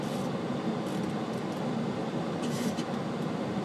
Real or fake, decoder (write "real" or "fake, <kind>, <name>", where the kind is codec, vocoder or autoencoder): real